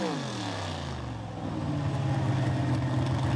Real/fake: real